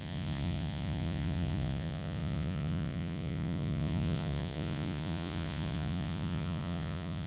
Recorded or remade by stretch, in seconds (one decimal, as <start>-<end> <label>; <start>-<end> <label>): 0.0-7.3 remade

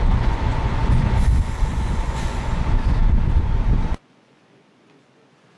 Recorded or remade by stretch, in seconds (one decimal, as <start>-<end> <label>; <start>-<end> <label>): 0.0-5.6 remade

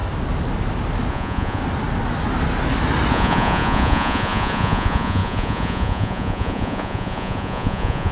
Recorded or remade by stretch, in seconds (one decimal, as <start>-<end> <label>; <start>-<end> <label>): 0.0-1.1 recorded; 1.1-1.6 remade; 1.6-3.1 recorded; 3.1-8.1 remade

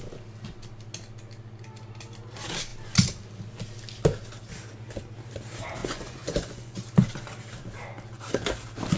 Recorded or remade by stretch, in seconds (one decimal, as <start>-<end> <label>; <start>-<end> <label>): 0.0-5.8 recorded; 5.8-6.8 remade; 6.8-9.0 recorded

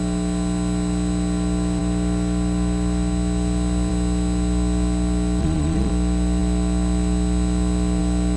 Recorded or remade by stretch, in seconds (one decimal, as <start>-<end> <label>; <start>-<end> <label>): 0.0-5.4 recorded; 5.4-5.9 remade; 5.9-8.4 recorded

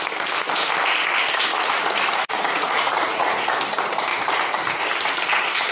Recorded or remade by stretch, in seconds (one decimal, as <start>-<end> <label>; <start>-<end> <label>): 0.0-1.5 recorded; 1.5-3.5 remade; 3.5-5.7 recorded

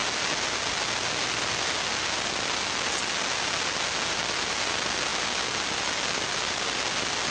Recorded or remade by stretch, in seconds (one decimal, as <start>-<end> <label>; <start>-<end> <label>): 0.0-7.3 recorded

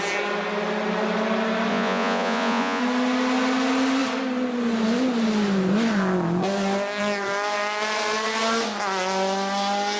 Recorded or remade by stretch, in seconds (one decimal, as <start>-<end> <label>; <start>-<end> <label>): 0.0-1.7 recorded; 1.7-2.8 remade; 2.8-10.0 recorded